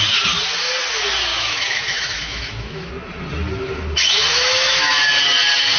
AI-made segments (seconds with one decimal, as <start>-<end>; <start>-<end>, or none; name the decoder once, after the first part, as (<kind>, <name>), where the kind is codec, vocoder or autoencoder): 1.3-2.9 (autoencoder, DAC-VAE); 4.3-4.9